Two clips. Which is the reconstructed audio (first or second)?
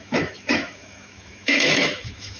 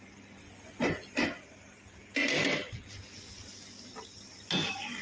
first